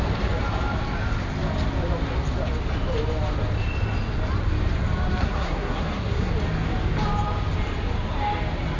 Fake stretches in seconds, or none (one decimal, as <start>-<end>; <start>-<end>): 5.2-6.3